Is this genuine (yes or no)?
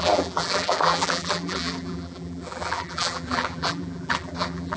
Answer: no